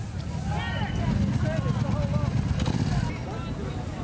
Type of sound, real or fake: real